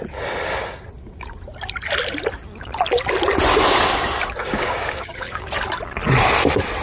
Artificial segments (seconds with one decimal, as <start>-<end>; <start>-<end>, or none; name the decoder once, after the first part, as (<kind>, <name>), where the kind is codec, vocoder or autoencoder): 4.4-5.5 (codec, DAC)